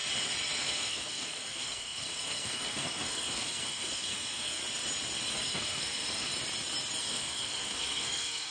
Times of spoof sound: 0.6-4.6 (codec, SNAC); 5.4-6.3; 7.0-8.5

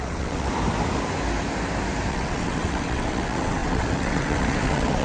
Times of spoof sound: 0.0-0.5 (vocoder, WaveNeXt); 2.1-5.0